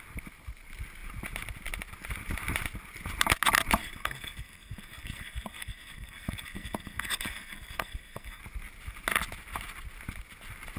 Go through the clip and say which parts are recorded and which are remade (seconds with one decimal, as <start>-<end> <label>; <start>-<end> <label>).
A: 0.0-3.8 recorded; 3.8-8.4 remade; 8.4-10.8 recorded